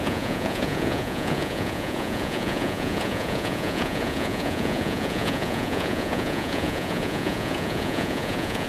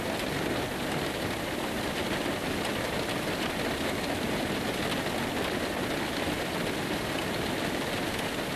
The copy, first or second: first